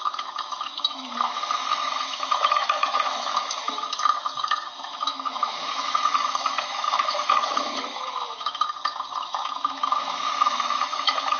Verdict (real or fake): fake